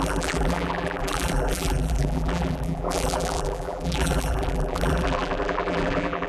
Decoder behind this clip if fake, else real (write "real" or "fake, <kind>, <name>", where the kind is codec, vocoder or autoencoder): fake, vocoder, BigVGAN v2